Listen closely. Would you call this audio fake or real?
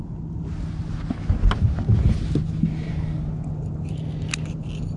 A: real